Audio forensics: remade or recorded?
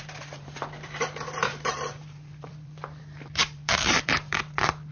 remade